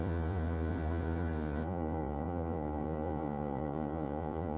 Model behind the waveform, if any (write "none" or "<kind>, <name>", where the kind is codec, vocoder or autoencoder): vocoder, Vocos